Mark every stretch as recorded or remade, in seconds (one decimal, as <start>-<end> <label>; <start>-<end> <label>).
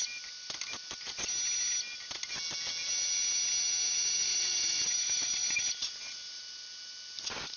0.0-4.2 recorded; 4.2-6.4 remade; 6.4-7.6 recorded